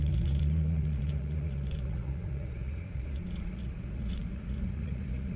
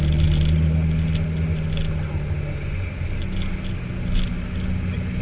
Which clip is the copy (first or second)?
first